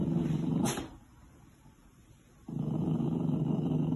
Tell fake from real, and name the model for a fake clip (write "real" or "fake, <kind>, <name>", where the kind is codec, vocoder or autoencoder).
real